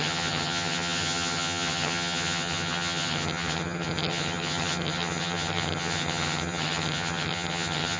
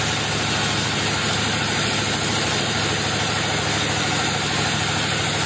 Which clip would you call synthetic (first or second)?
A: first